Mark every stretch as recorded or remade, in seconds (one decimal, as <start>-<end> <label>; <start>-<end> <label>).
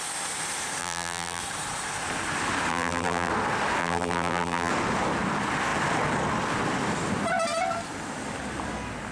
0.0-0.8 recorded; 0.8-1.4 remade; 1.4-2.7 recorded; 2.7-3.3 remade; 3.3-3.8 recorded; 3.8-4.7 remade; 4.7-9.1 recorded